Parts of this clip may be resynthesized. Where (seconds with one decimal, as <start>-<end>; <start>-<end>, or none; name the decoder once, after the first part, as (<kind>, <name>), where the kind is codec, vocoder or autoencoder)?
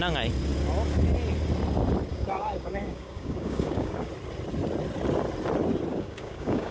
2.1-4.1 (codec, DAC); 5.9-6.7